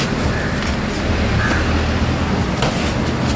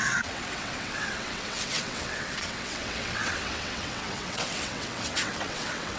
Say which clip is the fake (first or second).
second